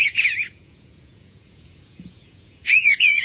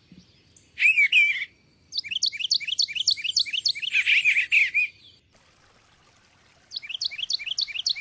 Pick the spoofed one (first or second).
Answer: first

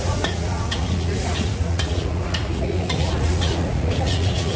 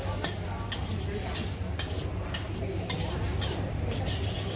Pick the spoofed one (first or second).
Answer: first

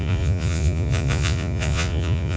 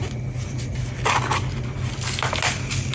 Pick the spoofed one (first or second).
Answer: first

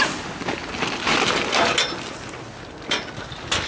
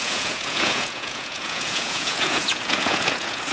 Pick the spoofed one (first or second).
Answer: second